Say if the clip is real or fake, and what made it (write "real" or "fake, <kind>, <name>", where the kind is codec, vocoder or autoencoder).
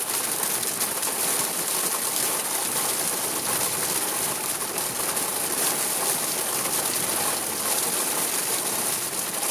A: real